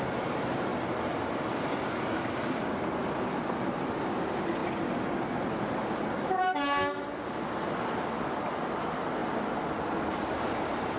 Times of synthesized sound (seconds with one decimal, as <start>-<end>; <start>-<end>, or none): none